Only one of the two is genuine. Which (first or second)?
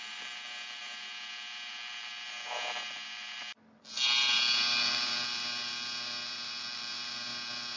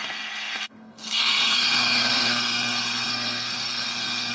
first